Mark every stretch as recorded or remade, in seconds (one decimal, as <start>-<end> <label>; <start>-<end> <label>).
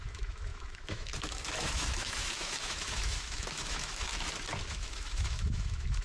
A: 0.0-4.1 remade; 4.1-4.7 recorded; 4.7-6.0 remade